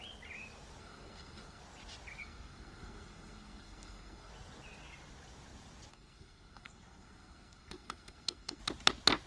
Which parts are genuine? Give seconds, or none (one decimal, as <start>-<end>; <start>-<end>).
0.0-0.8; 1.6-2.2; 4.3-5.9; 8.6-9.3